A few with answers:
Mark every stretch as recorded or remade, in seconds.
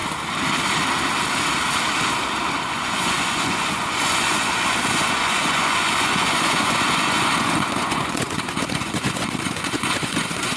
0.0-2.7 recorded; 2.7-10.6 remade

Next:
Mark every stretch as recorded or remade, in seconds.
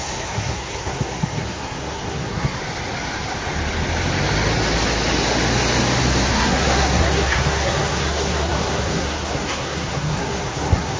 0.0-2.6 remade; 2.6-6.3 recorded; 6.3-11.0 remade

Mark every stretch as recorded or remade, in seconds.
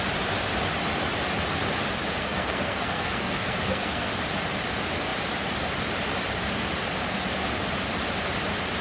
0.0-2.2 recorded; 2.2-4.1 remade; 4.1-8.8 recorded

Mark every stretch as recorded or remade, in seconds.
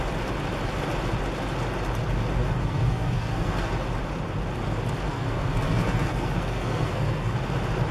0.0-2.4 recorded; 2.4-3.7 remade; 3.7-5.1 recorded; 5.1-7.3 remade; 7.3-7.9 recorded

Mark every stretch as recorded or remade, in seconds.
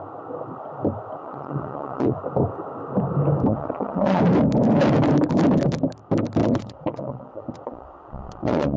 0.0-1.2 recorded; 1.2-2.2 remade; 2.2-3.5 recorded; 3.5-4.2 remade; 4.2-6.4 recorded; 6.4-8.8 remade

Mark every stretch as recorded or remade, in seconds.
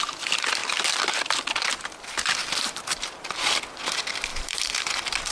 0.0-2.4 recorded; 2.4-3.6 remade; 3.6-4.3 recorded; 4.3-5.3 remade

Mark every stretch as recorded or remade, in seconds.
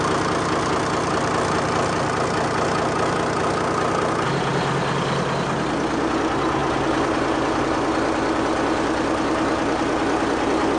0.0-10.8 recorded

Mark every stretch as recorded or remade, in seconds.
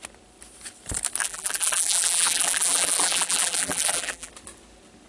0.0-1.2 recorded; 1.2-4.3 remade; 4.3-5.1 recorded